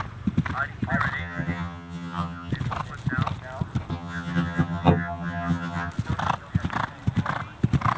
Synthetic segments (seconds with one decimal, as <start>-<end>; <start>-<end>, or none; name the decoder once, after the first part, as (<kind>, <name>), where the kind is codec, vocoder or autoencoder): 1.2-2.5 (vocoder, HiFi-GAN); 3.9-5.9